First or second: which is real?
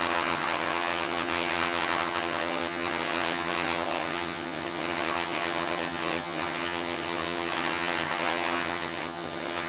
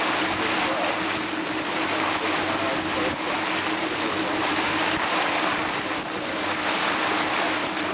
second